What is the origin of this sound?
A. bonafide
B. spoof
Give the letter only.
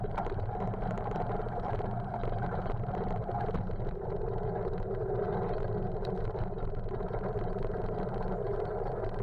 A